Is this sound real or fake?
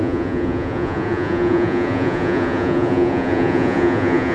fake